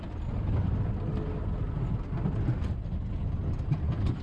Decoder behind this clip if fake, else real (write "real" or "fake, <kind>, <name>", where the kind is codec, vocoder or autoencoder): real